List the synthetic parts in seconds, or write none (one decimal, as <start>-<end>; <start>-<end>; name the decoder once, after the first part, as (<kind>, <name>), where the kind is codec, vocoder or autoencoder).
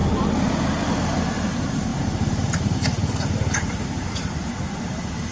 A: 0.8-5.3 (vocoder, BigVGAN v2)